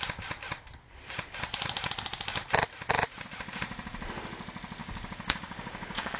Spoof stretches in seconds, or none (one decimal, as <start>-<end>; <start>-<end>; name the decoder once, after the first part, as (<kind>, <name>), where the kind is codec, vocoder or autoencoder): 4.8-6.2 (codec, DAC)